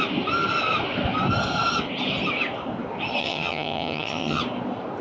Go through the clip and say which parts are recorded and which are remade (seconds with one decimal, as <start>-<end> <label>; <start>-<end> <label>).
0.0-3.2 recorded; 3.2-4.4 remade; 4.4-5.0 recorded